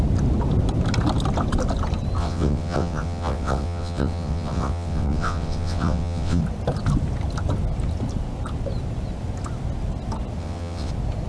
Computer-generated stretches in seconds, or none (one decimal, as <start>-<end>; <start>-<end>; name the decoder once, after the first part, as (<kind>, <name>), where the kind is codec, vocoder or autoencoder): 2.2-6.4 (vocoder, WaveNeXt); 10.4-10.9